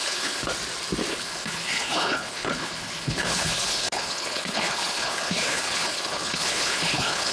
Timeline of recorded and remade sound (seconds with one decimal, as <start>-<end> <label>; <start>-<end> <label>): 0.0-0.4 remade; 0.4-1.1 recorded; 1.1-7.3 remade